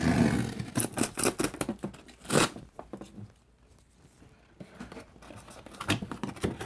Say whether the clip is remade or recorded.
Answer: recorded